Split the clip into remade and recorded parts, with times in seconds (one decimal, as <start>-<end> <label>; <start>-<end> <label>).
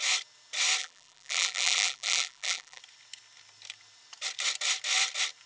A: 0.0-0.8 recorded; 0.8-2.8 remade; 2.8-5.5 recorded